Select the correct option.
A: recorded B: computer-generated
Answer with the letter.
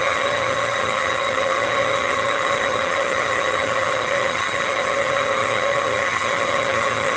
B